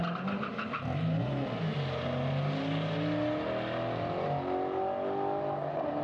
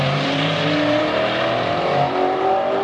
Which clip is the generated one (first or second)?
second